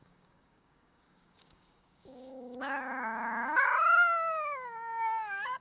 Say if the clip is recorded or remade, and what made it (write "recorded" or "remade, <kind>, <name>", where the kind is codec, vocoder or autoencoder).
remade, codec, DAC